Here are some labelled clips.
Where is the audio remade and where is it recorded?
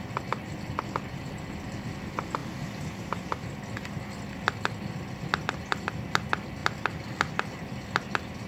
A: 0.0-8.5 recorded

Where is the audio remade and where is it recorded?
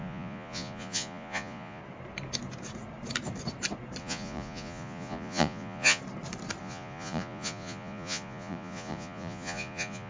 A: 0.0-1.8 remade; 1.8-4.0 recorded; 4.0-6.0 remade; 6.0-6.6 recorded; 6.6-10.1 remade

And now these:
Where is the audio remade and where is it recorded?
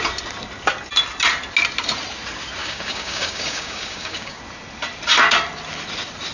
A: 0.0-2.6 recorded; 2.6-4.4 remade; 4.4-6.3 recorded